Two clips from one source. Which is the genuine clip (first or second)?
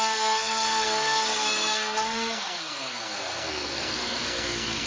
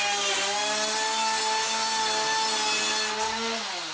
second